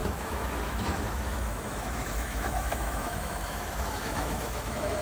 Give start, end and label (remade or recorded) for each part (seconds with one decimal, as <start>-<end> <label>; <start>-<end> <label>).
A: 0.0-5.0 remade